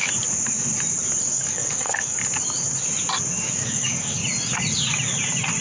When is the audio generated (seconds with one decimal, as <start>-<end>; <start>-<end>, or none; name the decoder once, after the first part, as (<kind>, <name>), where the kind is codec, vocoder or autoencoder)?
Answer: 1.2-2.2 (codec, DAC); 3.5-4.2